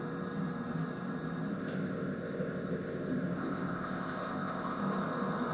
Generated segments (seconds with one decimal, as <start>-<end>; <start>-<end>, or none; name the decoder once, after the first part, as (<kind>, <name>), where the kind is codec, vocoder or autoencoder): 1.5-4.8 (codec, ZipCodec)